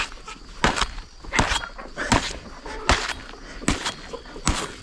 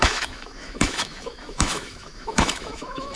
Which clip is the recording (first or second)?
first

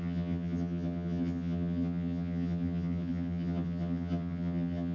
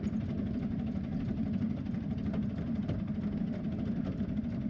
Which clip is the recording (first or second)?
second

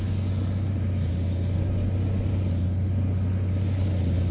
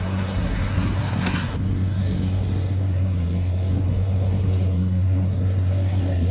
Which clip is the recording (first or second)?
first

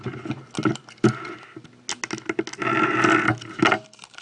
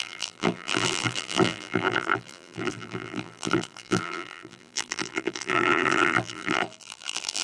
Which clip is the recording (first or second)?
first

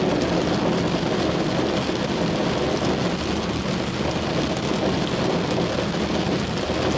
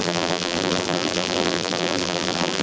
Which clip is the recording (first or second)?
first